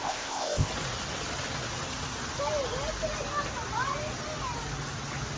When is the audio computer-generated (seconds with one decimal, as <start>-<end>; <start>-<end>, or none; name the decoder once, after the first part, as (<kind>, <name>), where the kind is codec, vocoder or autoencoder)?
0.0-0.7 (codec, ZipCodec)